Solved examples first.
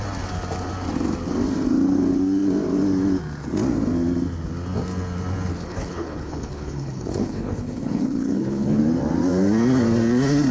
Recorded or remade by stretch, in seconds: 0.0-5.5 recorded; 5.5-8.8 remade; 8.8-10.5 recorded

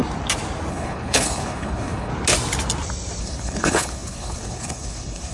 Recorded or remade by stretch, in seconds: 0.0-0.7 recorded; 0.7-2.1 remade; 2.1-3.2 recorded; 3.2-5.3 remade

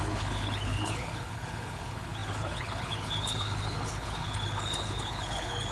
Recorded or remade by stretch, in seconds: 0.0-5.7 remade

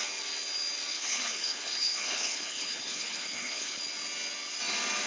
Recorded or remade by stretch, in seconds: 0.0-0.9 recorded; 0.9-3.8 remade; 3.8-5.1 recorded

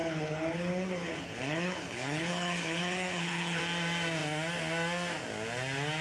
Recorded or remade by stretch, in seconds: 0.0-3.6 remade; 3.6-6.0 recorded

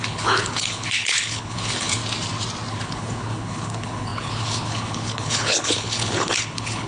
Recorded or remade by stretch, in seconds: 0.0-2.0 remade; 2.0-2.7 recorded; 2.7-6.9 remade